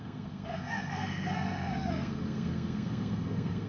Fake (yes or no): yes